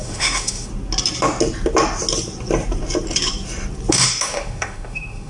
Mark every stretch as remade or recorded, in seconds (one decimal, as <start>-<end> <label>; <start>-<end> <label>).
0.0-0.7 remade; 0.7-3.9 recorded; 3.9-5.3 remade